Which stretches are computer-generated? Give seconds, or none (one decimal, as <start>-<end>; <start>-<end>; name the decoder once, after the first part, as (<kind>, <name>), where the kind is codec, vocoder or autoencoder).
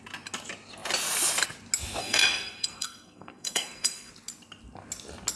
2.0-4.1 (codec, SNAC)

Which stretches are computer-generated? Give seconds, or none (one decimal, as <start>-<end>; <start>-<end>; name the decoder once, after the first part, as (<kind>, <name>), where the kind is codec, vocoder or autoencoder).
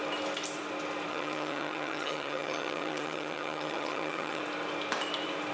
1.1-4.4 (vocoder, HiFi-GAN)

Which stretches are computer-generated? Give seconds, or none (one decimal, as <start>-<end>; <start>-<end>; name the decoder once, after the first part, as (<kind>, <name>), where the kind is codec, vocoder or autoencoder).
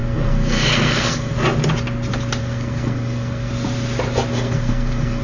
0.0-1.3 (codec, SNAC); 2.4-3.5; 4.3-5.2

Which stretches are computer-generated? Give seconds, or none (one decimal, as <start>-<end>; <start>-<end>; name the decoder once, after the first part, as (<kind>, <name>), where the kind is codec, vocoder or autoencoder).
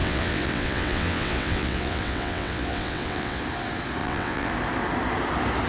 0.0-3.4 (vocoder, WaveNeXt); 4.0-4.5